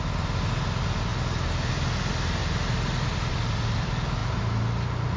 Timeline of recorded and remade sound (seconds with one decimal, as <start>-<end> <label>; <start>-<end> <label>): 0.0-5.2 recorded